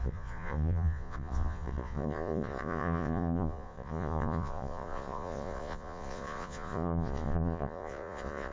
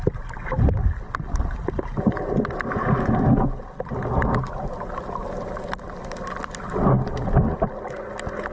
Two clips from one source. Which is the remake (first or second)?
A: first